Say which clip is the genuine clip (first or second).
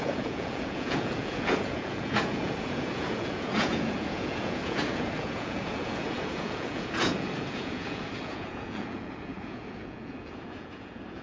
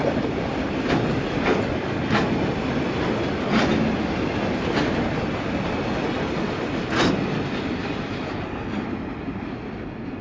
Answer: second